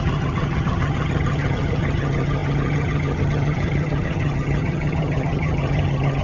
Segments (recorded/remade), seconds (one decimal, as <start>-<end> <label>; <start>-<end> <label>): 0.0-6.2 remade